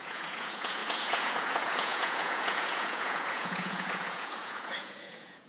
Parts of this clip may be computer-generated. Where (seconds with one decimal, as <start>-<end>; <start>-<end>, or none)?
0.0-5.5